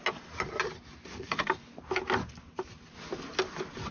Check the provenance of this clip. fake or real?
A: real